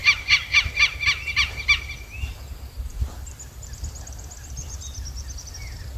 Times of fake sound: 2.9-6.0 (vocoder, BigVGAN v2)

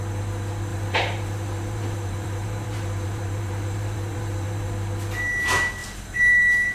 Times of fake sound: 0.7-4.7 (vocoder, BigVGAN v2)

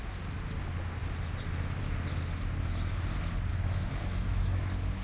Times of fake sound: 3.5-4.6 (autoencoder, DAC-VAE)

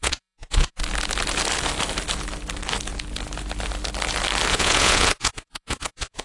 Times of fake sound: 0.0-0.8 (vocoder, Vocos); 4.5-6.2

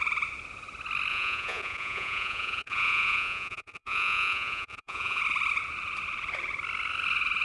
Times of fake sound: 1.1-5.2 (vocoder, Vocos)